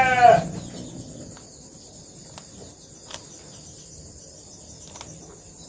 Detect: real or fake real